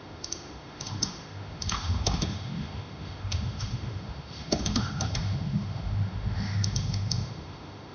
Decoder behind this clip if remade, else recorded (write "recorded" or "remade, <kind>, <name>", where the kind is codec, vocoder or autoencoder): remade, autoencoder, DAC-VAE